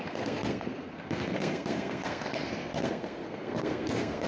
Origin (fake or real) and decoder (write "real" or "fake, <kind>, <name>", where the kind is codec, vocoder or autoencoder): fake, codec, SNAC